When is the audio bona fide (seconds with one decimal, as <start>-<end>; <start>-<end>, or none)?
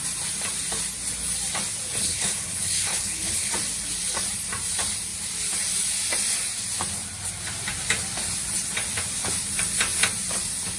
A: 0.0-2.0; 3.5-10.8